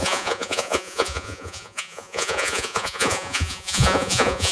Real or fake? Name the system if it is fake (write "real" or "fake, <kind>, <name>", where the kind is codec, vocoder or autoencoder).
fake, vocoder, Vocos